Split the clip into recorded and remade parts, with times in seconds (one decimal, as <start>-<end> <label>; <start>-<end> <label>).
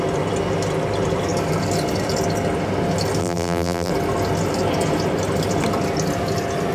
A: 0.0-3.2 recorded; 3.2-3.9 remade; 3.9-6.7 recorded